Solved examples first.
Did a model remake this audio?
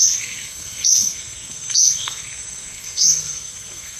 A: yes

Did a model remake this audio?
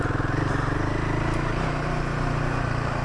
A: no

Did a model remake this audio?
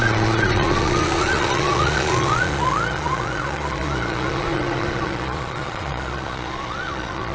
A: yes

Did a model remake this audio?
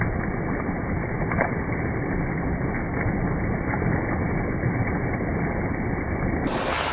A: no